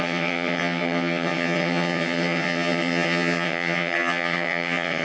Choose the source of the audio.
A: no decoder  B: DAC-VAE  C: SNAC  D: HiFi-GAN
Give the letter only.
D